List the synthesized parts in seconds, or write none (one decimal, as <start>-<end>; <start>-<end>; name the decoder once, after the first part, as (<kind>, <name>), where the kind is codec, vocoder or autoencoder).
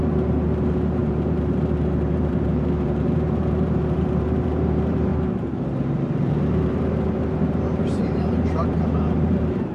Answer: 0.0-5.1 (vocoder, BigVGAN v2); 5.6-9.7